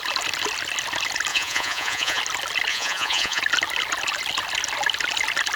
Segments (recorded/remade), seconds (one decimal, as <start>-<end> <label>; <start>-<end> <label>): 0.0-1.3 recorded; 1.3-2.2 remade; 2.2-2.7 recorded; 2.7-3.4 remade; 3.4-5.5 recorded